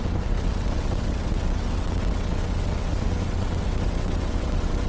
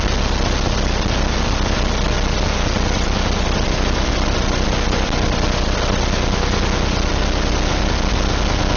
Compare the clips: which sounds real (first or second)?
second